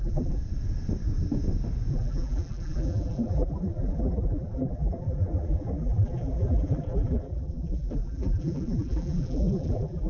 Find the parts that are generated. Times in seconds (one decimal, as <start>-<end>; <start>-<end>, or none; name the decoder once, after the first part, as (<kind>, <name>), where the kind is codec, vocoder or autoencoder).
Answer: 0.0-0.4 (vocoder, BigVGAN v2); 1.9-10.1